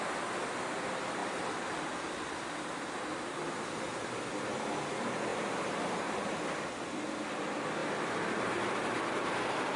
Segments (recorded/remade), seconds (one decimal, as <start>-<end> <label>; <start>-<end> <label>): 0.0-5.3 recorded; 5.3-6.7 remade; 6.7-7.8 recorded; 7.8-9.8 remade